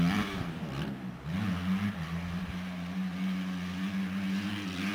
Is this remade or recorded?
recorded